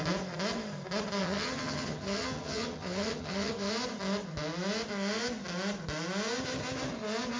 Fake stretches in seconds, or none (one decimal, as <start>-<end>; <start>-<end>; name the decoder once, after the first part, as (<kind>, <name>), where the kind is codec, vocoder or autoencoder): 1.2-3.7 (vocoder, HiFi-GAN)